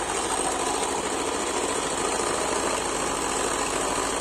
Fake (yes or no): no